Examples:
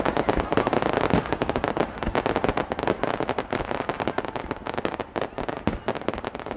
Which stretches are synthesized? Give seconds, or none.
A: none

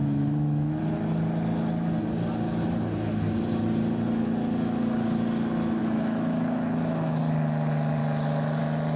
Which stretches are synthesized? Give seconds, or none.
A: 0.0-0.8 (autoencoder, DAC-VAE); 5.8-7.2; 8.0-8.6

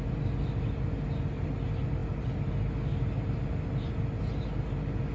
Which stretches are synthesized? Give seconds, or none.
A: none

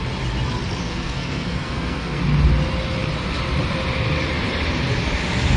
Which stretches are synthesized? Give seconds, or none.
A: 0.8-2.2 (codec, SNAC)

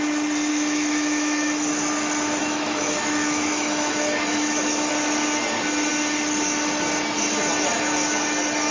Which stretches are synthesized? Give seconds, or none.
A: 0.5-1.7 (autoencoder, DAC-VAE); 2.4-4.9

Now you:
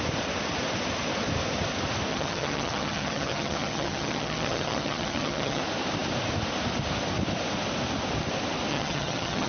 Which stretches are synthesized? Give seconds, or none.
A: 2.1-5.6 (vocoder, HiFi-GAN); 8.7-9.5